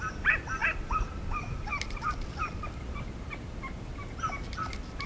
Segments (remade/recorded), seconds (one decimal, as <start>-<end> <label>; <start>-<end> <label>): 0.0-5.1 recorded

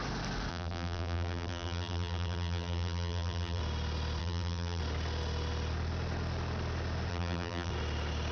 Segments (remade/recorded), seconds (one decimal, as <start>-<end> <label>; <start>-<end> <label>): 0.0-0.5 recorded; 0.5-3.6 remade; 3.6-4.2 recorded; 4.2-4.8 remade; 4.8-7.1 recorded; 7.1-7.7 remade; 7.7-8.3 recorded

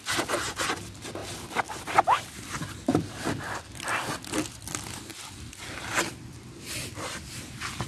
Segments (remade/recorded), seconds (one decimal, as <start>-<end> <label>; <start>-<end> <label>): 0.0-7.9 recorded

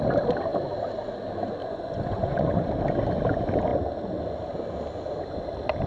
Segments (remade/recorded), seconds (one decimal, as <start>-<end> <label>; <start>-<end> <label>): 0.0-1.6 recorded; 1.6-2.7 remade; 2.7-5.9 recorded